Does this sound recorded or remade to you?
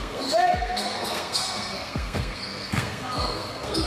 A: remade